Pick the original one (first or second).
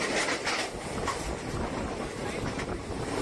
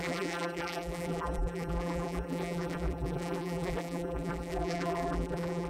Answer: first